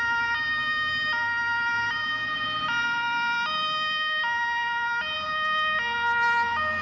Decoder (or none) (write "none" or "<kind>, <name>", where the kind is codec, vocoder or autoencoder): none